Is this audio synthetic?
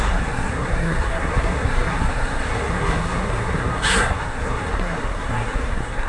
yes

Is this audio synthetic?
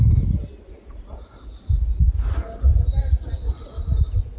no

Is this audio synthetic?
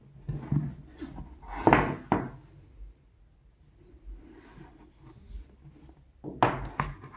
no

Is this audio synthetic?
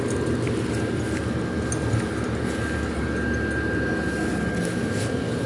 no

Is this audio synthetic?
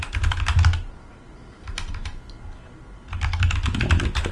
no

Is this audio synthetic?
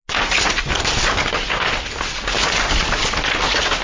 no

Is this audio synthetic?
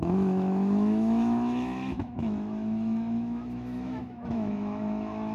yes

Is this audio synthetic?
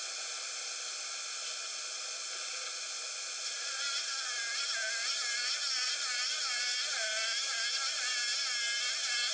no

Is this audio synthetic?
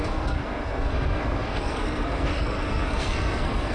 yes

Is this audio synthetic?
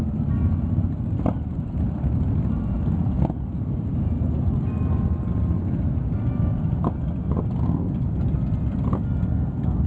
no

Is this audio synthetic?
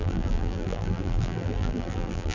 yes